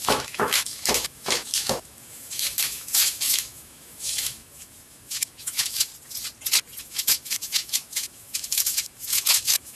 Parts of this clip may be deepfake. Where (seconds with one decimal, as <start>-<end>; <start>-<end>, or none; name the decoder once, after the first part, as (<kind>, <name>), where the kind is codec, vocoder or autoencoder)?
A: 0.0-5.9 (autoencoder, DAC-VAE); 6.8-9.7